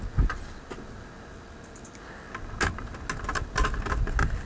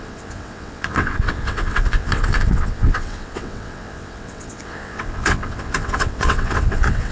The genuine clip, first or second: first